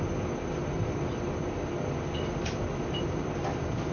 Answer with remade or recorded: recorded